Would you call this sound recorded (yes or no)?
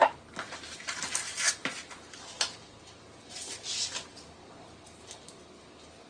yes